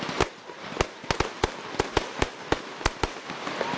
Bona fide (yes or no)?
yes